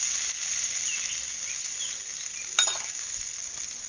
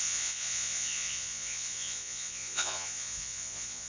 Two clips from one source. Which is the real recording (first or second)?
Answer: first